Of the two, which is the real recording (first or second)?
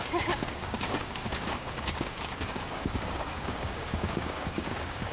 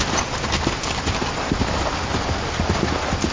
second